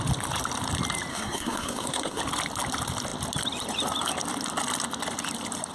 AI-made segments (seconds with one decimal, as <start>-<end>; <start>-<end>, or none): 1.1-2.2